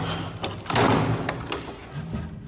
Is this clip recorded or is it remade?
recorded